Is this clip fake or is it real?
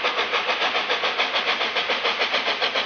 real